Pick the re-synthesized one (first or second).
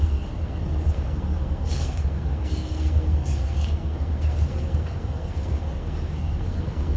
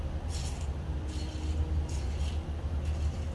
first